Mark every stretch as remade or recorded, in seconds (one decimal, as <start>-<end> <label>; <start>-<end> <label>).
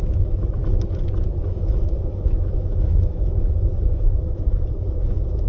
0.0-0.6 remade; 0.6-1.4 recorded; 1.4-5.5 remade